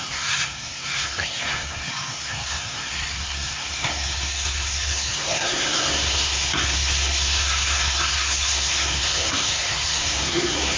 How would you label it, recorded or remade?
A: remade